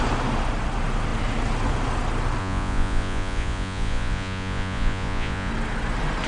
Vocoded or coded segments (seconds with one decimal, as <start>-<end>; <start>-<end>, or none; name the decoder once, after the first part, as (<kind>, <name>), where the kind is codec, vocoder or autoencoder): 2.4-5.5 (vocoder, Vocos)